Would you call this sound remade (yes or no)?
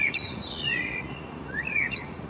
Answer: yes